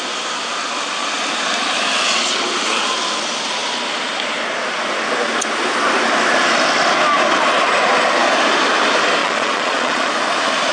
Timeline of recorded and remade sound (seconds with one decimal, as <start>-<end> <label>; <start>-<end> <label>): 0.0-9.2 recorded; 9.2-10.1 remade; 10.1-10.7 recorded